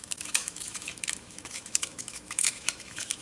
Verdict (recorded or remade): remade